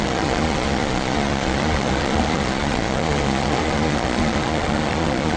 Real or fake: fake